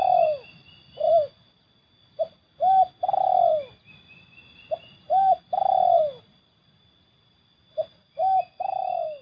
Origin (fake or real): real